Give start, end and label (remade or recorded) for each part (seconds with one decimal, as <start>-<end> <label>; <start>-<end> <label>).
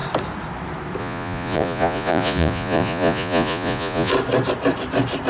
0.0-1.0 recorded; 1.0-4.1 remade; 4.1-5.3 recorded